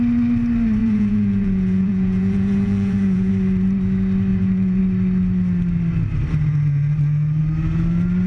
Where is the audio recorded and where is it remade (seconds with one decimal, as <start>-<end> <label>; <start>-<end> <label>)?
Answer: 0.0-0.8 recorded; 0.8-3.3 remade; 3.3-4.3 recorded; 4.3-4.8 remade; 4.8-8.3 recorded